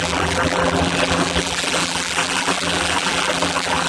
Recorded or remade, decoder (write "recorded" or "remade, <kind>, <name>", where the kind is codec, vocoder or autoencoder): remade, vocoder, BigVGAN v2